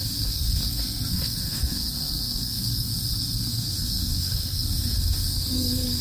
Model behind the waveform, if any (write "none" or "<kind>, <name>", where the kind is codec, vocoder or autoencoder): codec, SNAC